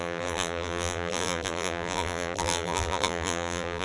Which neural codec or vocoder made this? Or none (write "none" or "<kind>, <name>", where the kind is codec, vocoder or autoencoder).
vocoder, BigVGAN v2